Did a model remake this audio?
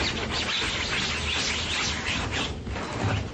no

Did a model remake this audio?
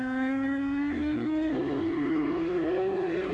yes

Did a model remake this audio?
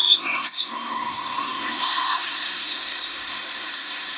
yes